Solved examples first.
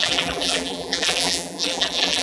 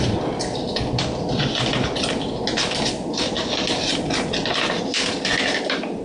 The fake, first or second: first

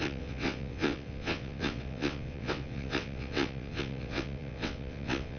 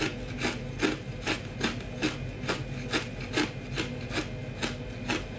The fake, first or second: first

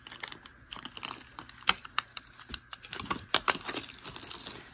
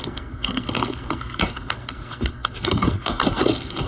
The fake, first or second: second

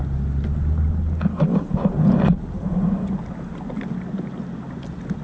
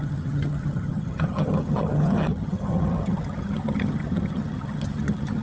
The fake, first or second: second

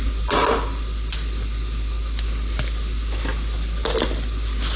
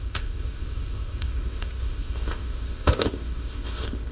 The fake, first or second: second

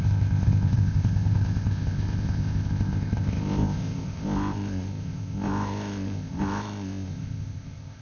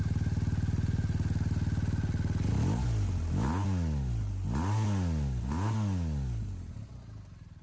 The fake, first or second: first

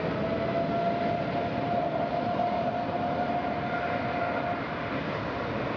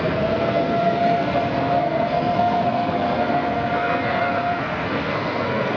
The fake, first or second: second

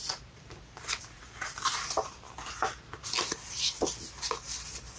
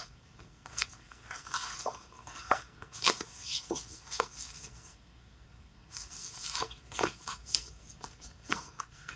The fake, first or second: second